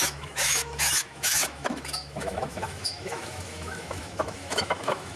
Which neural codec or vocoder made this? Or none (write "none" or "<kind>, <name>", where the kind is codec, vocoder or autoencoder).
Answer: autoencoder, DAC-VAE